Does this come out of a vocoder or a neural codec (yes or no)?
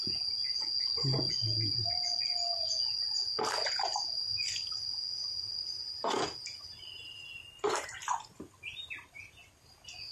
no